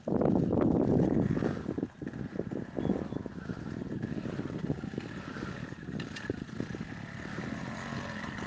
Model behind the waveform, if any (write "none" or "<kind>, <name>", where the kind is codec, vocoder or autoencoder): none